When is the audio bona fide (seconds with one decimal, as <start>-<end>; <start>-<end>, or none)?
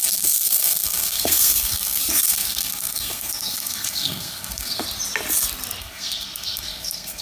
4.8-5.8